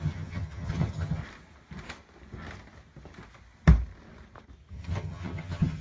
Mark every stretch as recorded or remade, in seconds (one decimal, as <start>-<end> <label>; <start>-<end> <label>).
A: 0.0-1.2 remade; 1.2-4.7 recorded; 4.7-5.8 remade